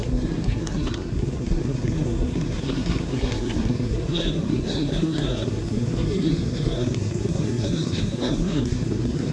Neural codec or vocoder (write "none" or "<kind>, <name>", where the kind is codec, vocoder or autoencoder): codec, SNAC